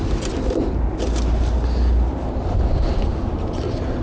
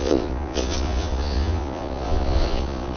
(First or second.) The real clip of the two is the first